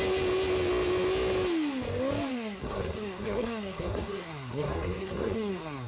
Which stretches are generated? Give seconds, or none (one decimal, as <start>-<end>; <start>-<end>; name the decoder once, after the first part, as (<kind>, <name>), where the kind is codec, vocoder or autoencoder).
2.3-5.9 (codec, SNAC)